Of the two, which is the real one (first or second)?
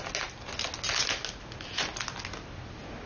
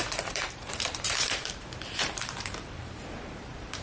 first